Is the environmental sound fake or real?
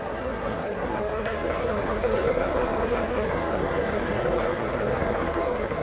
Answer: fake